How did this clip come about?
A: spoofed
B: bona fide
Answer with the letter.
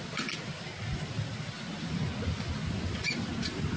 B